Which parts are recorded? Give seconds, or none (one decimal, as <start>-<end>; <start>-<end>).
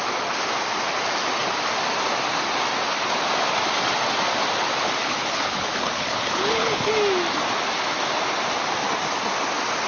0.0-5.0; 6.9-9.9